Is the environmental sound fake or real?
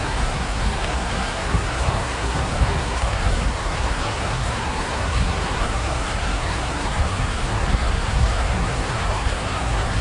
fake